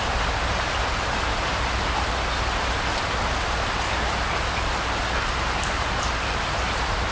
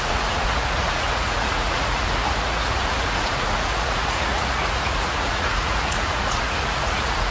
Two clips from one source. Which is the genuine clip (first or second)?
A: first